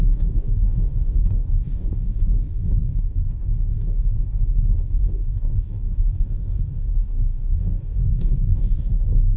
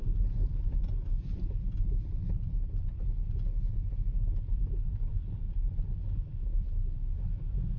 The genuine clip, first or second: second